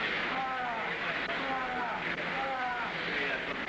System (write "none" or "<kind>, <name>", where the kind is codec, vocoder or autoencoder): none